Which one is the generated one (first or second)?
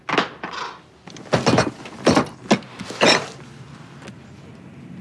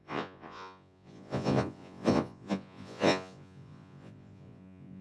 second